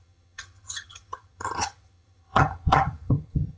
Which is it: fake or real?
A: fake